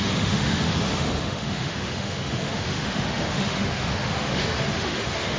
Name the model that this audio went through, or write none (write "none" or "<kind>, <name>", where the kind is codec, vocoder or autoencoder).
autoencoder, DAC-VAE